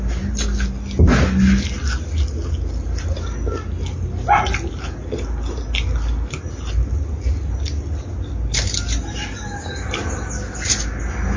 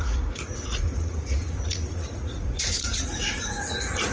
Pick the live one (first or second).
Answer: first